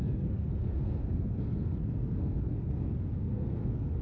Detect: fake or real fake